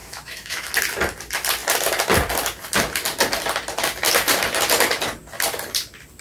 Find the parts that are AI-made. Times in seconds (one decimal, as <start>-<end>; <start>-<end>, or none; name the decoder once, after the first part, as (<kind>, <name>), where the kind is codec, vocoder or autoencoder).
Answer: 0.0-0.7 (autoencoder, DAC-VAE)